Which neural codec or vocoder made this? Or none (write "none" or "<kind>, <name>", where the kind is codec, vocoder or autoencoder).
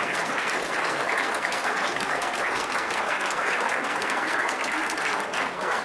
codec, SNAC